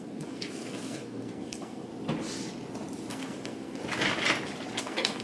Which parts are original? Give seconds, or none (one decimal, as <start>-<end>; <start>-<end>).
1.9-3.1; 3.8-4.8